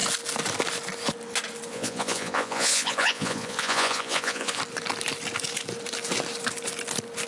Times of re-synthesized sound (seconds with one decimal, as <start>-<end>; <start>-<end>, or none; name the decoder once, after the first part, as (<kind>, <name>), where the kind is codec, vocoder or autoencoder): 1.7-4.6 (vocoder, Vocos)